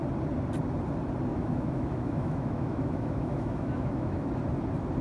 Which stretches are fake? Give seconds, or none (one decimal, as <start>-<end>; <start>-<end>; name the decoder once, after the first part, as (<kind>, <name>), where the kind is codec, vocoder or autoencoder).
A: 1.3-4.3 (autoencoder, DAC-VAE)